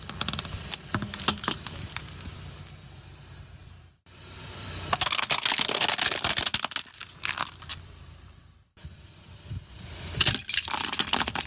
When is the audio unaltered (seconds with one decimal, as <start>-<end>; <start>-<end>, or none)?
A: 0.0-1.0; 2.0-3.6; 4.9-7.7